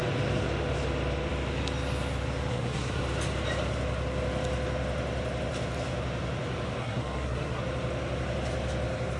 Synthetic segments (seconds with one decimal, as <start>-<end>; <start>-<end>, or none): 2.5-3.0; 6.8-7.6